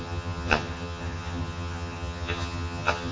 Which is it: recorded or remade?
remade